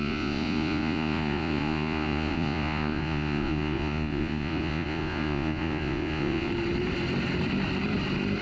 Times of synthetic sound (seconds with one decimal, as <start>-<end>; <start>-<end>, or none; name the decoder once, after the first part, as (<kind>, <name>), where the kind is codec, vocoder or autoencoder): 0.0-6.5 (vocoder, Vocos)